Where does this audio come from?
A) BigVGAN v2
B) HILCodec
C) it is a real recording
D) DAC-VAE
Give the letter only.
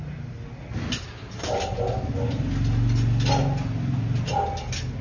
C